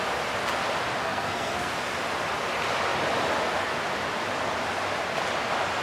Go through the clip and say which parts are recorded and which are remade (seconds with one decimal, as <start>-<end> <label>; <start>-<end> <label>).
0.0-1.0 recorded; 1.0-1.7 remade; 1.7-5.8 recorded